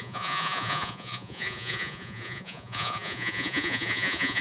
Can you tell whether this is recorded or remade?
remade